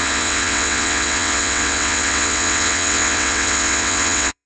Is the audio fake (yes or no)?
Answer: yes